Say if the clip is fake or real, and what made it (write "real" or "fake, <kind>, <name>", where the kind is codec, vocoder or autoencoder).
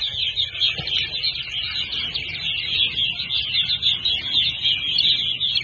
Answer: real